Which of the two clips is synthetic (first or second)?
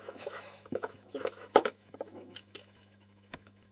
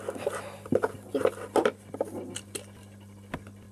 first